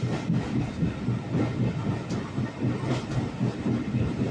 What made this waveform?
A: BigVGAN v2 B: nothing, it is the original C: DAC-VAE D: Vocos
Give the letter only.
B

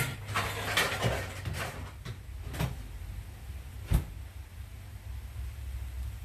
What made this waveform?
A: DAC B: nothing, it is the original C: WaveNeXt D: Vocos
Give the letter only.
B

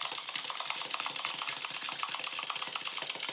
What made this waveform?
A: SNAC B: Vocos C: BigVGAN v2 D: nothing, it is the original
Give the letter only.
D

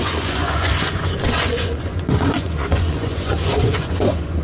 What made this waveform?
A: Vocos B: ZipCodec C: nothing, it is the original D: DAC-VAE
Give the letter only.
A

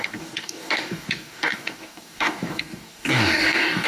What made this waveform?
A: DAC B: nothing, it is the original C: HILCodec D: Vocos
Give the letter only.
A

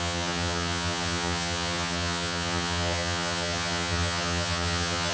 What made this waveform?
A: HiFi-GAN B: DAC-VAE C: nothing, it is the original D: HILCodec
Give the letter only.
A